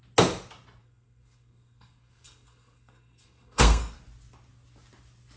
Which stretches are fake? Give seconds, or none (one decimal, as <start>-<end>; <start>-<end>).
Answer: 0.8-4.0